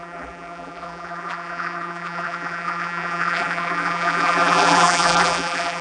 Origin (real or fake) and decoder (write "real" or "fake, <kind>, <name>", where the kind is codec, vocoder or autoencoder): fake, vocoder, BigVGAN v2